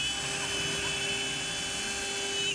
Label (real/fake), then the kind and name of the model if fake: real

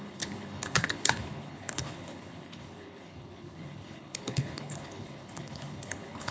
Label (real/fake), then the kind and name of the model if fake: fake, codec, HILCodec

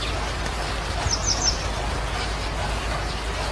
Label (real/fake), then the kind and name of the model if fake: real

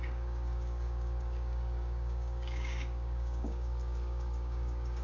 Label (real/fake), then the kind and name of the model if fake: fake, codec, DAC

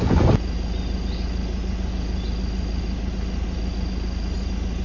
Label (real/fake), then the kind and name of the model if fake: real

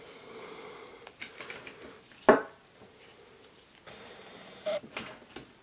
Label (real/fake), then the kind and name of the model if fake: real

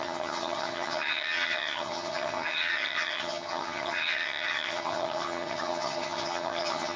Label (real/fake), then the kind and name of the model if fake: fake, vocoder, HiFi-GAN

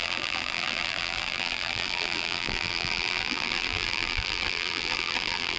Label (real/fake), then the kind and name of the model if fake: fake, vocoder, BigVGAN v2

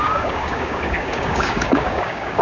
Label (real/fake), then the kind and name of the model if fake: fake, codec, DAC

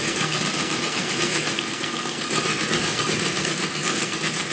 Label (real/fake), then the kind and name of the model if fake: fake, codec, SNAC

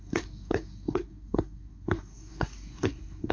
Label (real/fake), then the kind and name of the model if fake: fake, codec, SNAC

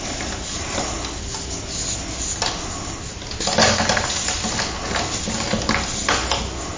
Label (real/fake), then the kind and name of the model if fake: real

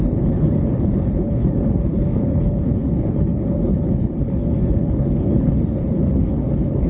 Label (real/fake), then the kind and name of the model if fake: fake, codec, HILCodec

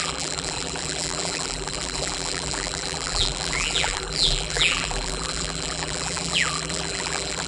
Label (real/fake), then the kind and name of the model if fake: fake, vocoder, BigVGAN v2